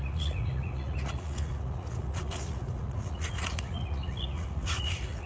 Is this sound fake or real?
fake